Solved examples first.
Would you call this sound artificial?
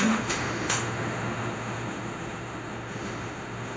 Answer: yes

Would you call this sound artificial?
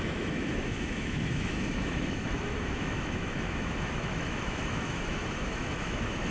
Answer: yes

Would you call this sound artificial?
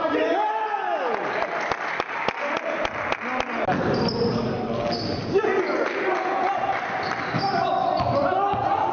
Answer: no